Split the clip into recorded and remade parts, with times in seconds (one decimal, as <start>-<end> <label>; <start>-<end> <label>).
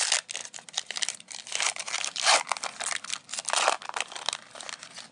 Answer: 0.0-0.4 recorded; 0.4-3.5 remade; 3.5-5.1 recorded